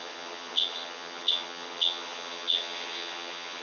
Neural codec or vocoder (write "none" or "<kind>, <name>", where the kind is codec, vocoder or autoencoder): vocoder, HiFi-GAN